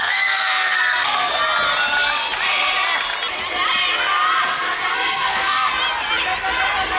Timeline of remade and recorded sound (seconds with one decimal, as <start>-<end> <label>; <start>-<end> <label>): 0.0-1.3 remade; 1.3-4.9 recorded; 4.9-5.7 remade; 5.7-7.0 recorded